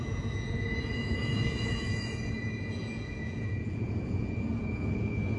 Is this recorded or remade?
remade